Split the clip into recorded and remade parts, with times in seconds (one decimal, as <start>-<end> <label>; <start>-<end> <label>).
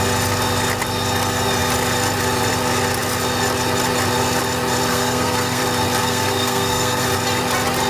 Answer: 0.0-4.9 recorded; 4.9-5.6 remade; 5.6-6.0 recorded; 6.0-7.1 remade; 7.1-7.9 recorded